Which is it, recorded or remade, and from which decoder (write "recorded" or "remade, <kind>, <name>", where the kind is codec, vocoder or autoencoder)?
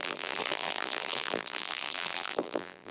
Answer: remade, vocoder, BigVGAN v2